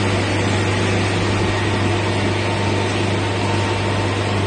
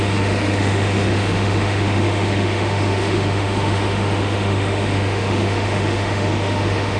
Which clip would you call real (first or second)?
first